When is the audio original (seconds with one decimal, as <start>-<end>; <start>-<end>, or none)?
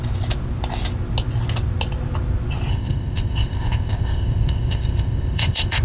0.0-2.7